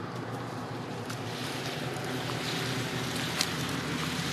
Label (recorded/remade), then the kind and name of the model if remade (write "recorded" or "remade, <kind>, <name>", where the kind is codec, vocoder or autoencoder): remade, vocoder, BigVGAN v2